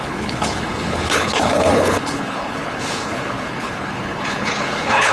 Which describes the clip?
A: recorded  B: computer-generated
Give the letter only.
B